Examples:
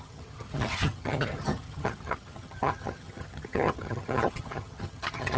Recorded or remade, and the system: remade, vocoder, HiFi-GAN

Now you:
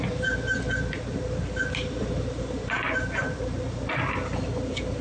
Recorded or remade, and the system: recorded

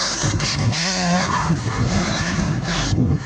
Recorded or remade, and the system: remade, codec, SNAC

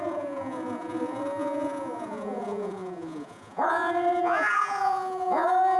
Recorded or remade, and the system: remade, vocoder, Vocos